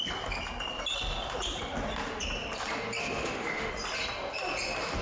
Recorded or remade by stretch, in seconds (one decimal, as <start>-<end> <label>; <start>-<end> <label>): 0.0-3.0 recorded; 3.0-3.7 remade; 3.7-5.0 recorded